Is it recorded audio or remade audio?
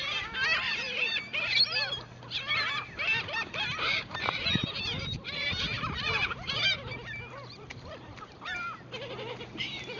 remade